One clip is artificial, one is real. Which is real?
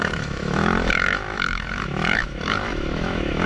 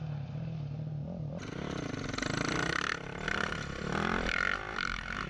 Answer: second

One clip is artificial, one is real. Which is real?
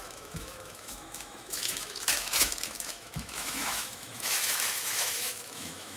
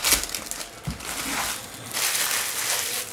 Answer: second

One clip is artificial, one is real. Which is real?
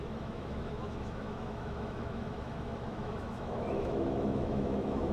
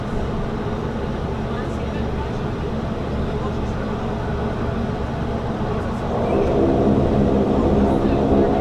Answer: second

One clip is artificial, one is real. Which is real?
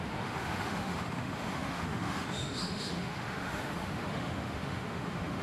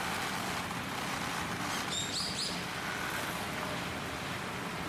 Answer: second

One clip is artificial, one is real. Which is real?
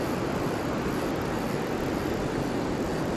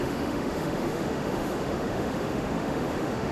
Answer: first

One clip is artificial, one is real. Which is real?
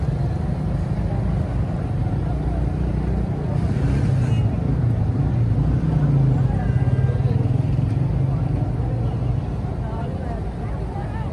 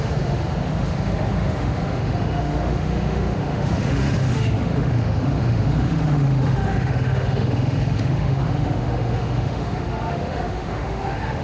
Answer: first